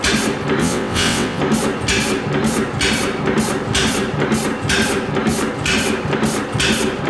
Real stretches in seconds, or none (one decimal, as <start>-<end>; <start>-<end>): 0.0-0.6; 1.4-7.1